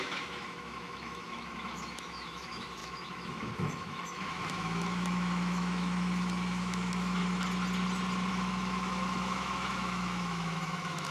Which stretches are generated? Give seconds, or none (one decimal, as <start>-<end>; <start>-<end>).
0.0-7.2; 8.3-11.1